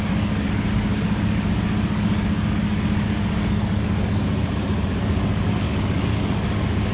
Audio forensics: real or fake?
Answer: fake